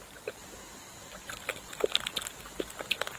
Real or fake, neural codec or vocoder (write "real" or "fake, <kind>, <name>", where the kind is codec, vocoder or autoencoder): real